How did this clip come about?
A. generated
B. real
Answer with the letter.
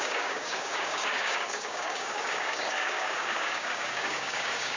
A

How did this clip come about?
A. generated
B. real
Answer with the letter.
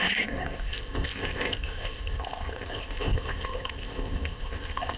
A